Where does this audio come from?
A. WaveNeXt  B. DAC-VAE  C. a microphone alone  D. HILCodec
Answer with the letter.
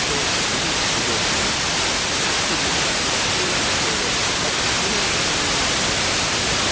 C